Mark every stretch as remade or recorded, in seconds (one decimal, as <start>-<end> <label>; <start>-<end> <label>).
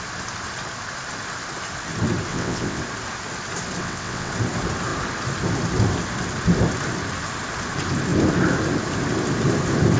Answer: 0.0-2.3 recorded; 2.3-2.8 remade; 2.8-3.8 recorded; 3.8-4.3 remade; 4.3-10.0 recorded